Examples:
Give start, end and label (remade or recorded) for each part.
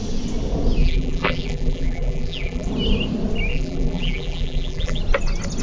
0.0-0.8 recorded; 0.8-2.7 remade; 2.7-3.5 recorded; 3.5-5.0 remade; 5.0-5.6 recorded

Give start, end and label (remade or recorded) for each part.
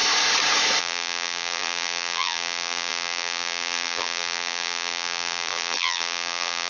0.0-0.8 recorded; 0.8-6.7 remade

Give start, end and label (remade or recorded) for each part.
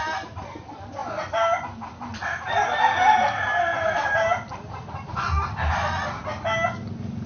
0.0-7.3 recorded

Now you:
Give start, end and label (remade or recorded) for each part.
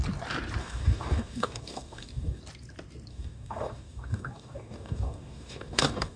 0.0-0.6 recorded; 0.6-2.4 remade; 2.4-3.1 recorded; 3.1-6.2 remade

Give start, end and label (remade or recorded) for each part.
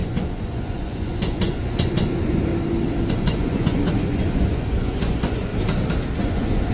0.0-2.5 remade; 2.5-3.1 recorded; 3.1-5.5 remade; 5.5-6.2 recorded; 6.2-6.7 remade